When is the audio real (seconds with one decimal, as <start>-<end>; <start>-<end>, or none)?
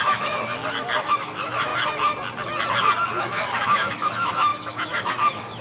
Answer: 0.6-1.1; 1.7-3.2